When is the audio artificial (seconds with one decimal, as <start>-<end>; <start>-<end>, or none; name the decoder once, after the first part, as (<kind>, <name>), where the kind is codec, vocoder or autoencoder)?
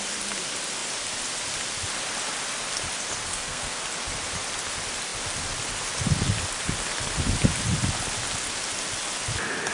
3.3-3.8 (codec, SNAC)